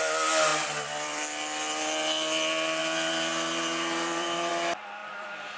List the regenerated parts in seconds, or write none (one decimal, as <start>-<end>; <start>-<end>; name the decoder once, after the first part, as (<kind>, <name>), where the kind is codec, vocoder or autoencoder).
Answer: 0.5-1.2 (vocoder, BigVGAN v2); 2.8-4.5; 5.0-5.6